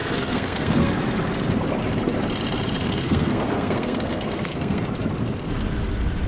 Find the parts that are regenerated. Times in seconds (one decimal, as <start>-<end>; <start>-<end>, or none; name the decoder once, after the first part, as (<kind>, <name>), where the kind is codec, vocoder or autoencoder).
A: 0.0-0.9 (codec, SNAC); 2.8-4.8